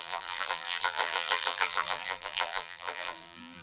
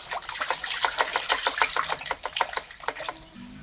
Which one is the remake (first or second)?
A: first